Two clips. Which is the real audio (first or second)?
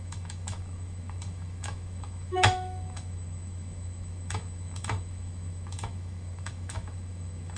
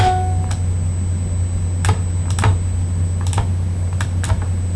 second